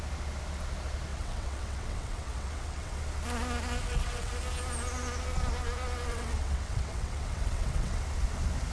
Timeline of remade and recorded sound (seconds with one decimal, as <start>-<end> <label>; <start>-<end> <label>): 0.0-1.1 recorded; 1.1-3.0 remade; 3.0-3.8 recorded; 3.8-4.3 remade; 4.3-6.1 recorded; 6.1-8.0 remade; 8.0-8.7 recorded

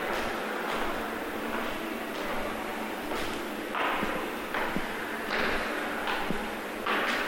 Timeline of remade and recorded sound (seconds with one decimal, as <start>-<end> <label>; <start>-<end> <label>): 0.0-7.3 recorded

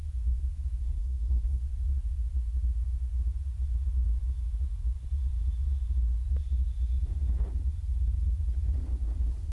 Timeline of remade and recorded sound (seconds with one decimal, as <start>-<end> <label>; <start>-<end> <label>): 0.0-0.8 recorded; 0.8-1.6 remade; 1.6-9.5 recorded

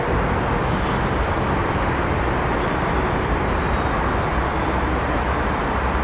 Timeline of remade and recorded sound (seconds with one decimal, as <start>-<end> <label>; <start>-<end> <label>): 0.0-6.0 recorded

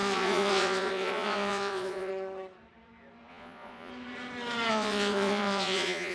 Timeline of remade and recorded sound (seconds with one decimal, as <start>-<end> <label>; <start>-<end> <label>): 0.0-2.1 remade; 2.1-3.3 recorded; 3.3-3.9 remade; 3.9-4.7 recorded; 4.7-6.1 remade

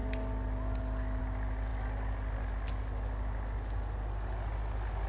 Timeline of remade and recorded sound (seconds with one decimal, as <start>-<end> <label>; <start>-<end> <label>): 0.0-5.1 recorded

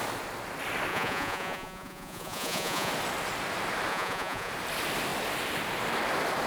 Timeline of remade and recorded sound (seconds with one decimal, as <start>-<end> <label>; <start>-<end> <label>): 0.0-0.9 recorded; 0.9-2.9 remade; 2.9-3.9 recorded; 3.9-4.5 remade; 4.5-6.5 recorded